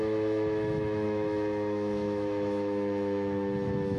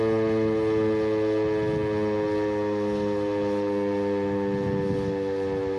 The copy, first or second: first